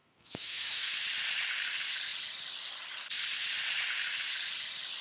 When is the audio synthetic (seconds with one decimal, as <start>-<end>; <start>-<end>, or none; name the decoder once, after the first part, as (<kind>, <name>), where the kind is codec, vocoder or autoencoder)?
0.0-0.9 (autoencoder, DAC-VAE)